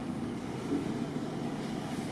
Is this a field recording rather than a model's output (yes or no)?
no